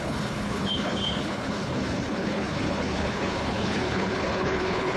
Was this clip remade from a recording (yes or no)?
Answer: yes